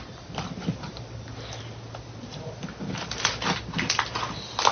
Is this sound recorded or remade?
recorded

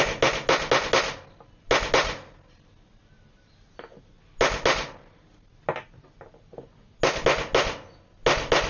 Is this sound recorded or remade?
recorded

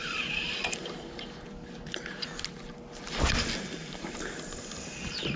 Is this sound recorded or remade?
recorded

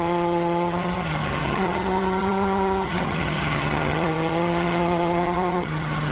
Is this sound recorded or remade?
remade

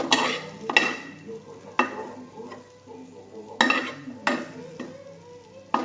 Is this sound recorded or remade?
recorded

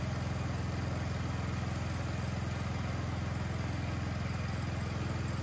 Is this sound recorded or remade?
recorded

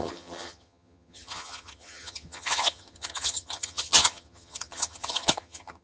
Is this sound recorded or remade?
remade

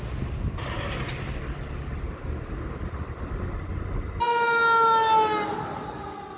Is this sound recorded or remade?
recorded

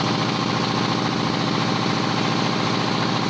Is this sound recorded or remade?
recorded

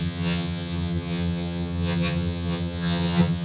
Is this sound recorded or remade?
remade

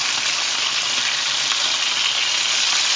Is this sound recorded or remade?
recorded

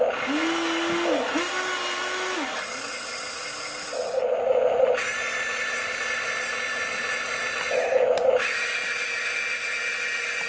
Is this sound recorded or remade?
recorded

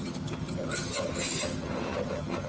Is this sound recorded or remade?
remade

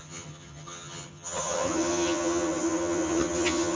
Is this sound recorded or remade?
remade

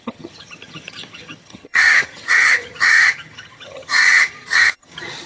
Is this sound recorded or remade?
remade